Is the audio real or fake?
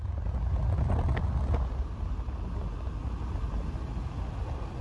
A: real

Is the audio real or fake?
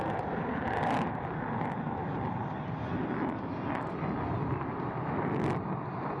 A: real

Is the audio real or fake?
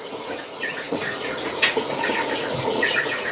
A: fake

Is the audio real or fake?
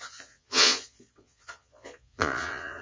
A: fake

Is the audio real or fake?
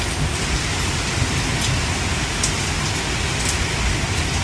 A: real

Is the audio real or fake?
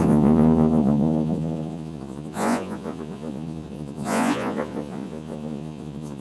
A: fake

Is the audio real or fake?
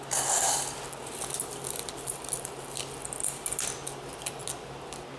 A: real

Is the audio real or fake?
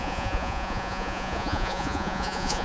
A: fake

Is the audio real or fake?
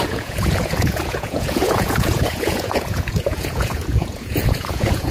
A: fake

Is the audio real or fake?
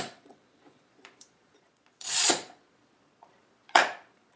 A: fake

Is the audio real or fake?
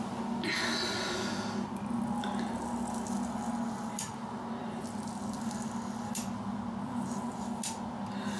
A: real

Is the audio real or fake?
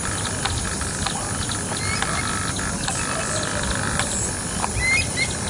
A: real